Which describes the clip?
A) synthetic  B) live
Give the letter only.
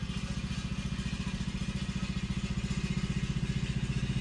B